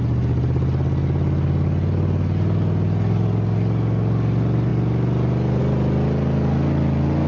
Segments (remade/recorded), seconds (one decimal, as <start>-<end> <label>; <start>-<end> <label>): 0.0-7.3 recorded